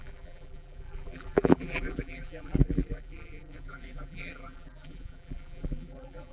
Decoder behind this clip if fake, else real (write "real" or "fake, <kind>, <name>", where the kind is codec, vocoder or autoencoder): fake, vocoder, BigVGAN v2